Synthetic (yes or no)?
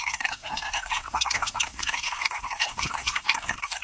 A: yes